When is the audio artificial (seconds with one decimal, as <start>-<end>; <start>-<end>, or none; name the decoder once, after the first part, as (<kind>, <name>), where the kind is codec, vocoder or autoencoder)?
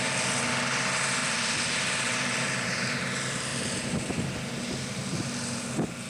1.2-3.0 (vocoder, BigVGAN v2)